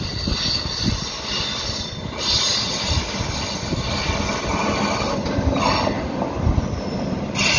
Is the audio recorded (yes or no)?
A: yes